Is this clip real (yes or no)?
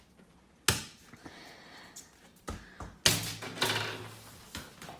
yes